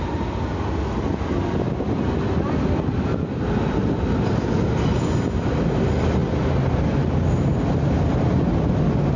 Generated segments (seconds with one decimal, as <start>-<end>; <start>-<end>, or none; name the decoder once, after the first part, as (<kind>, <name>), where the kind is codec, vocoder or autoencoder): none